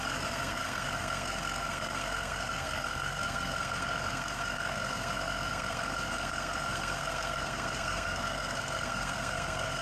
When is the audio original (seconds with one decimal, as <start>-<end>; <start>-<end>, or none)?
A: none